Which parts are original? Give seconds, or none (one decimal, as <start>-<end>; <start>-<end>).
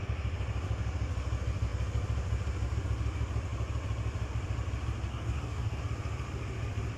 0.0-5.1; 5.8-7.0